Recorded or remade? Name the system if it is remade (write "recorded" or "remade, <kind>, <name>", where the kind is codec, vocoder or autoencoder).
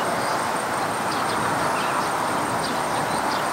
remade, vocoder, BigVGAN v2